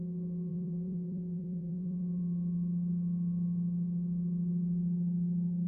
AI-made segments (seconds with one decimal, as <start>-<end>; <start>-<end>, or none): 0.5-2.2

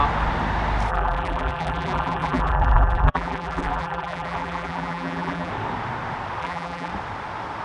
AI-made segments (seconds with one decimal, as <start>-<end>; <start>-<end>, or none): 0.9-5.5; 6.4-6.9

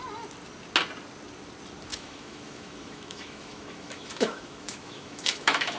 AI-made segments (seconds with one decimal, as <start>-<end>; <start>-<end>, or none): 1.9-5.8

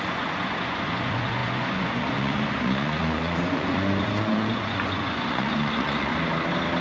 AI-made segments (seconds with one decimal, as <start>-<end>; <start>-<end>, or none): 0.0-6.1